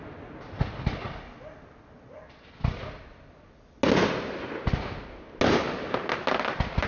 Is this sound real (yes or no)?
yes